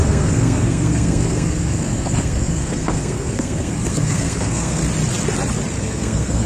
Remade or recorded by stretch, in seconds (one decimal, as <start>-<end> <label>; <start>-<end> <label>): 0.0-4.8 remade; 4.8-5.8 recorded; 5.8-6.5 remade